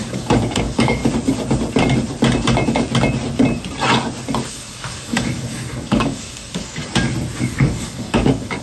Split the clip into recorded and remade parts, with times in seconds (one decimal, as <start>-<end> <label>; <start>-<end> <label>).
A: 0.0-1.0 remade; 1.0-4.5 recorded; 4.5-6.8 remade; 6.8-7.4 recorded; 7.4-8.6 remade